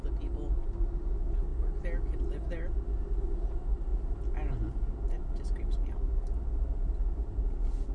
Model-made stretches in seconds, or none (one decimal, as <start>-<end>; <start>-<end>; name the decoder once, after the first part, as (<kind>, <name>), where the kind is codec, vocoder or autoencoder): none